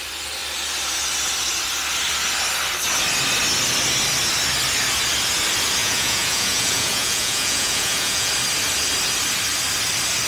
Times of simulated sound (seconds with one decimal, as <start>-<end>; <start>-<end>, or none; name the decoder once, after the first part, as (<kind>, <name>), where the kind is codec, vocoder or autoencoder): 5.8-8.3 (vocoder, Vocos)